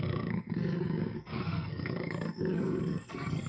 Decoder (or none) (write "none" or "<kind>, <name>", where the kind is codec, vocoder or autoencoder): codec, SNAC